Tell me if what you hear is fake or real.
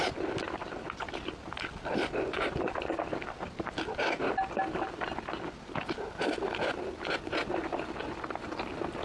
real